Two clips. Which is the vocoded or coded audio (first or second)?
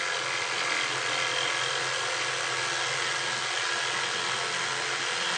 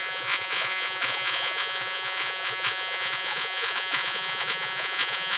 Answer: second